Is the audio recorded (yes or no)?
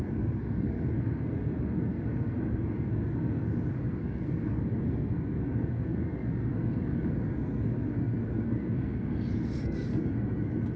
no